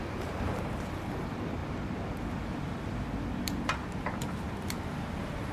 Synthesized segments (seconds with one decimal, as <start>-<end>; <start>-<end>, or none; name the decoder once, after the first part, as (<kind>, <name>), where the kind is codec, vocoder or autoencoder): none

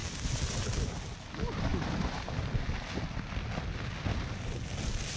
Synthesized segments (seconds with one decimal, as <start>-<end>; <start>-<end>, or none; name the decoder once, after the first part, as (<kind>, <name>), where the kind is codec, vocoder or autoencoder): none

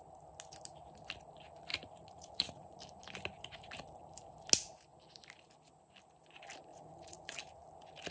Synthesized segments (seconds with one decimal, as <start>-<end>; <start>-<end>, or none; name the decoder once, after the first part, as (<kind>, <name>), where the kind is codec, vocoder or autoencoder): 1.7-2.8 (vocoder, Vocos); 6.7-7.4

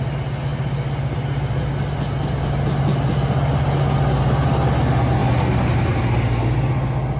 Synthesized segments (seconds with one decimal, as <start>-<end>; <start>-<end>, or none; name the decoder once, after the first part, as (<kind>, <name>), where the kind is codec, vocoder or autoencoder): none